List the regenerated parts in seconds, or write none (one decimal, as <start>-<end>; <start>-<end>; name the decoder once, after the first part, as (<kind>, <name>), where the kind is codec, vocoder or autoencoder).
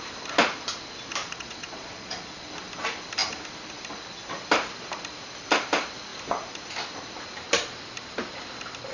1.2-2.5 (vocoder, Vocos)